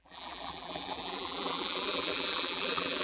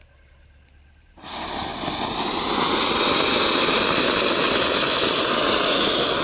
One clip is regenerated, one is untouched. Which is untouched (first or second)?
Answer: second